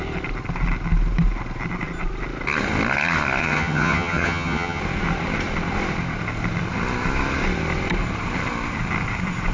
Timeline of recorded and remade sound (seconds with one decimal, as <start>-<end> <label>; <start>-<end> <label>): 0.0-3.4 recorded; 3.4-4.8 remade; 4.8-9.5 recorded